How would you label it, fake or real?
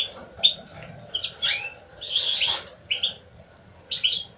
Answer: real